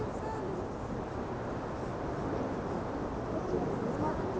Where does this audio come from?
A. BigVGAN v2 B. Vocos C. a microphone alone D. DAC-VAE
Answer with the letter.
C